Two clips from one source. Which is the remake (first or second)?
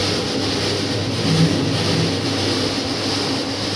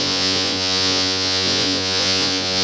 second